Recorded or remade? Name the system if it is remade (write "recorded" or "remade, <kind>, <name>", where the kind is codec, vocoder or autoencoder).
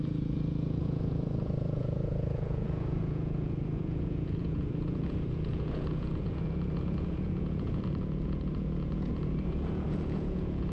remade, vocoder, Vocos